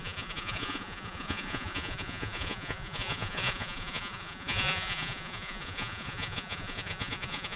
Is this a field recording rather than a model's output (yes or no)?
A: no